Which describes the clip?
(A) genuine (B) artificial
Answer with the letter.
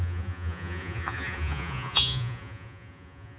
B